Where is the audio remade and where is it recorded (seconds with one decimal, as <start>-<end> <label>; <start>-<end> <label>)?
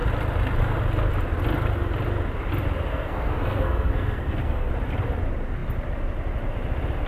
0.0-2.9 recorded; 2.9-4.7 remade; 4.7-7.1 recorded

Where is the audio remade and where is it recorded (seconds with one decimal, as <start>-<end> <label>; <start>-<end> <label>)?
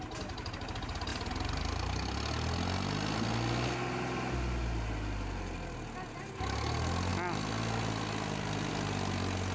0.0-9.5 recorded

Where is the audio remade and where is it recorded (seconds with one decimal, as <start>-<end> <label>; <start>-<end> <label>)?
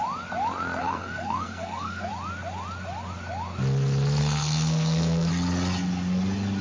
0.0-0.8 recorded; 0.8-2.1 remade; 2.1-4.2 recorded; 4.2-5.3 remade; 5.3-6.6 recorded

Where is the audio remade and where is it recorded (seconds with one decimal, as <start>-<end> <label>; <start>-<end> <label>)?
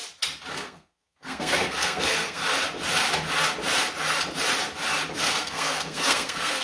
0.0-0.5 recorded; 0.5-2.4 remade; 2.4-5.2 recorded; 5.2-6.6 remade